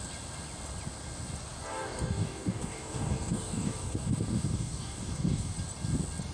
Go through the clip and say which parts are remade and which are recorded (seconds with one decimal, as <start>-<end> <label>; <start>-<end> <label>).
0.0-1.7 recorded; 1.7-5.5 remade; 5.5-6.3 recorded